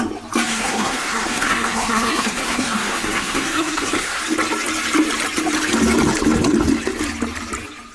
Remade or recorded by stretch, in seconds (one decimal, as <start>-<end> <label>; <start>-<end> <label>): 0.0-0.5 recorded; 0.5-4.2 remade; 4.2-7.9 recorded